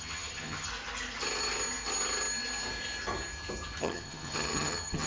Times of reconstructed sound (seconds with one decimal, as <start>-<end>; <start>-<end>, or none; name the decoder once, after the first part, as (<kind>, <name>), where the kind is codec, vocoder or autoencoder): 0.0-0.7 (vocoder, HiFi-GAN); 3.8-5.1